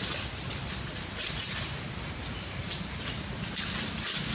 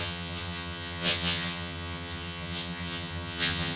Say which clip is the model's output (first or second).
second